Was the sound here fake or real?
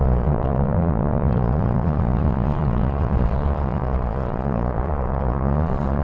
fake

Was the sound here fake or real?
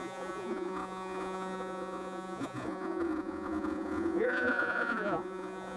fake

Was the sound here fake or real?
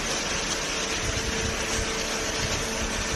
real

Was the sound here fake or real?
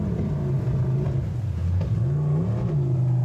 real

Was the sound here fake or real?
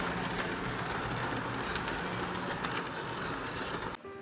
real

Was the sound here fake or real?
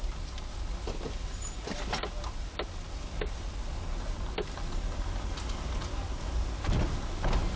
real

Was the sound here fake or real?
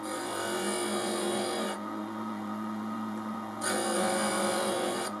fake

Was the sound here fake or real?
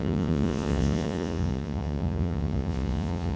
fake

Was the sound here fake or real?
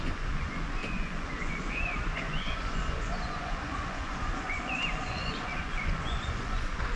fake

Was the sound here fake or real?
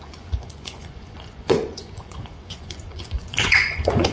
fake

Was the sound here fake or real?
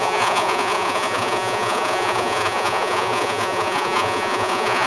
fake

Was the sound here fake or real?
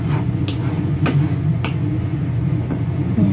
fake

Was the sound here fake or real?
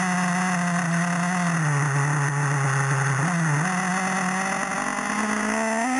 real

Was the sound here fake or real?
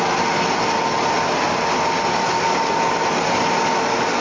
real